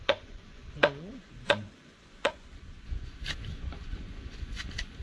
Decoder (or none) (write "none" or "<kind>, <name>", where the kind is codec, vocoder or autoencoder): vocoder, Vocos